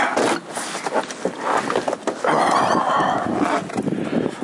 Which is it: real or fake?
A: real